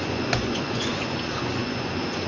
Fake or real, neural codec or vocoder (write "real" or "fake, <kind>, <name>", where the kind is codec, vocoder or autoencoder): fake, vocoder, Vocos